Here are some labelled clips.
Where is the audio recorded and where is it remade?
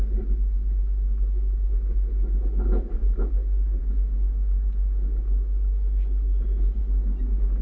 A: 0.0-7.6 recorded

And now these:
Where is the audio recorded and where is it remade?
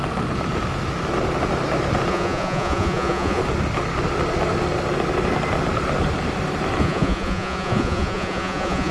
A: 0.0-2.1 recorded; 2.1-3.4 remade; 3.4-6.8 recorded; 6.8-8.9 remade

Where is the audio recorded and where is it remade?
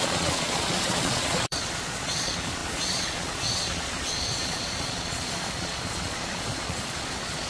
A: 0.0-7.5 remade